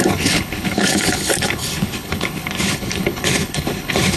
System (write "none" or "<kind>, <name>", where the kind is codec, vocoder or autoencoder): codec, HILCodec